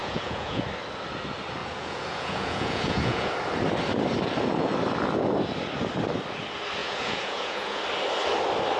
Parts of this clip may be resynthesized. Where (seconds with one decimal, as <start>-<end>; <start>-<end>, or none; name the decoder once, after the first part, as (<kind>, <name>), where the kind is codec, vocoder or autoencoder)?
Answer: 0.0-0.6 (vocoder, Vocos); 1.6-3.3; 6.8-7.8